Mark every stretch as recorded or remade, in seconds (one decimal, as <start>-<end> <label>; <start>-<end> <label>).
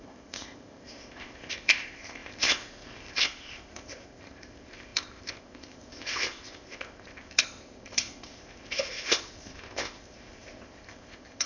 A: 0.0-11.5 remade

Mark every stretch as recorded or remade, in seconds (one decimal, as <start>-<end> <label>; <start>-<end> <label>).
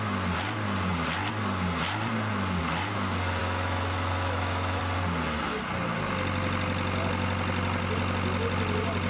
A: 0.0-3.4 recorded; 3.4-4.8 remade; 4.8-9.1 recorded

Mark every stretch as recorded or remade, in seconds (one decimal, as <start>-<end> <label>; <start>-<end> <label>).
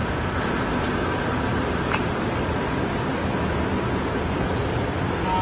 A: 0.0-0.6 remade; 0.6-5.4 recorded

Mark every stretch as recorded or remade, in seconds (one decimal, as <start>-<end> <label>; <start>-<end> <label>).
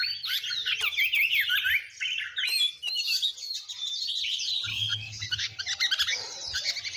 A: 0.0-4.7 recorded; 4.7-5.6 remade; 5.6-7.0 recorded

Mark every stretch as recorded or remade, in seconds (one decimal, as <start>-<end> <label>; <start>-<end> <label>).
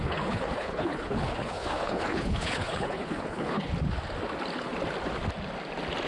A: 0.0-3.7 remade; 3.7-6.1 recorded